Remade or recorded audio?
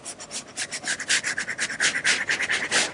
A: recorded